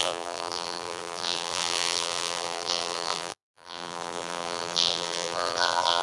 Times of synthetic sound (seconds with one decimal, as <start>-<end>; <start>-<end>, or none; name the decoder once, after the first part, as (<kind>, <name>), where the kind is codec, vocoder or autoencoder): 0.0-6.0 (vocoder, BigVGAN v2)